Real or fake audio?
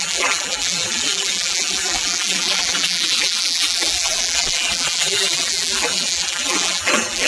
fake